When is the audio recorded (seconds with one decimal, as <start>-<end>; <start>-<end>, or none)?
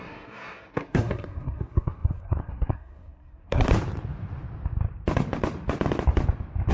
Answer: 3.7-6.7